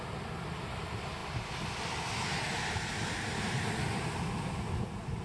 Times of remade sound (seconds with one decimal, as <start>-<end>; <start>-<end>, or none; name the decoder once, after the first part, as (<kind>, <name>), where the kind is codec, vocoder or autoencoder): none